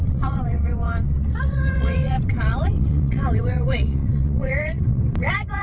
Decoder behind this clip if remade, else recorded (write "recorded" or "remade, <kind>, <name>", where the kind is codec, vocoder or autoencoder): remade, vocoder, WaveNeXt